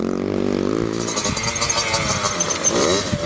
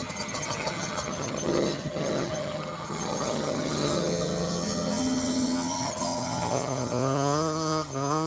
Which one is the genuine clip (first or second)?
first